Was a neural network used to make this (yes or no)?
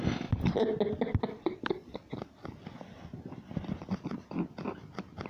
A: no